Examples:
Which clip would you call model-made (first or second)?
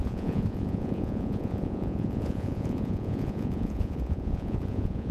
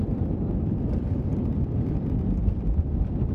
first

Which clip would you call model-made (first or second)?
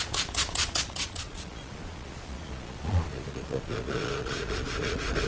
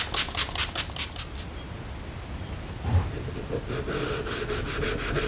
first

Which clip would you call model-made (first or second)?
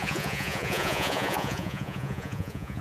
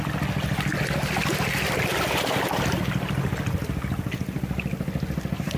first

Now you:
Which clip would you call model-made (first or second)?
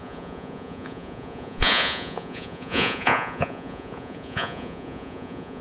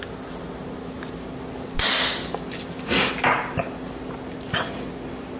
first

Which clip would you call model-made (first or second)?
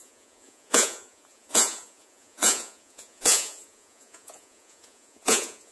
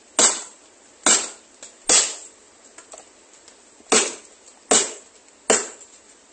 first